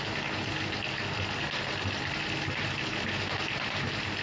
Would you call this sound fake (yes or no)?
no